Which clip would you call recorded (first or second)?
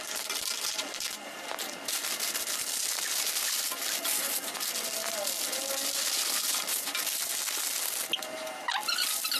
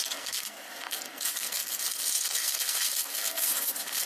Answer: first